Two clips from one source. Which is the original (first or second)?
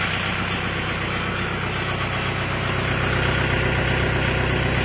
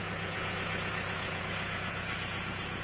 first